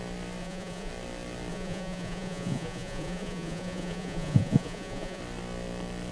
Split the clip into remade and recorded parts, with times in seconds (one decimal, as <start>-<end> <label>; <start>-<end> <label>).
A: 0.0-0.4 recorded; 0.4-0.9 remade; 0.9-1.5 recorded; 1.5-5.2 remade; 5.2-6.1 recorded